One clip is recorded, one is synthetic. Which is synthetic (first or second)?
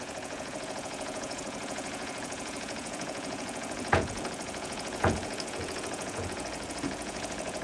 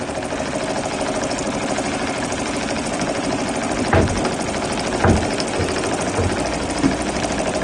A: first